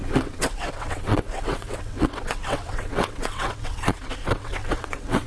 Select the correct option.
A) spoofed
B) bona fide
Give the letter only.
A